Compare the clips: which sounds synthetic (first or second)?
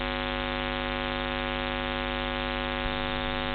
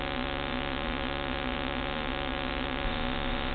second